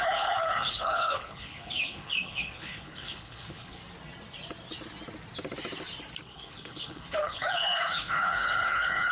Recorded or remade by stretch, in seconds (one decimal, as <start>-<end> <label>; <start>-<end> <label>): 0.0-3.8 remade; 3.8-6.2 recorded; 6.2-9.1 remade